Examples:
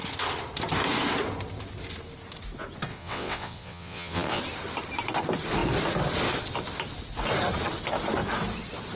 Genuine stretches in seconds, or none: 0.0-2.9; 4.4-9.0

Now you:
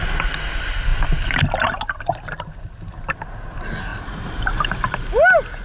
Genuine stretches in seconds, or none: 0.0-5.6

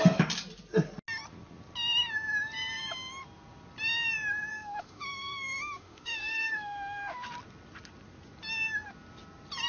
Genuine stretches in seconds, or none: 0.0-4.5; 7.3-9.7

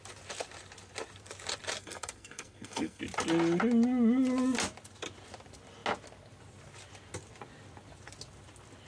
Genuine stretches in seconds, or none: 0.0-1.8; 3.0-8.9

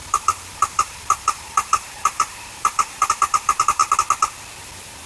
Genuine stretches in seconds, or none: 3.8-4.6